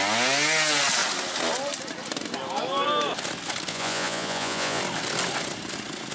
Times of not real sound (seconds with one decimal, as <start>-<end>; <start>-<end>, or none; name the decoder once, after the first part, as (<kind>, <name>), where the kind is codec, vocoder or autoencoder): 3.7-4.8 (vocoder, Vocos)